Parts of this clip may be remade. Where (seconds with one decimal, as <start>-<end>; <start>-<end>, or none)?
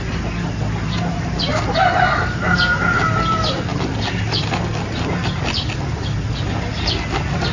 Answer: none